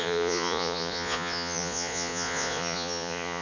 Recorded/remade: remade